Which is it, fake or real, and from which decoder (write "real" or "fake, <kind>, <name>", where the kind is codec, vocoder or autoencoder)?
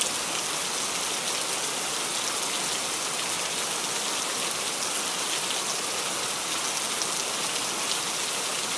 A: real